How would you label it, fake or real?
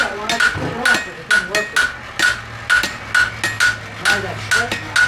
real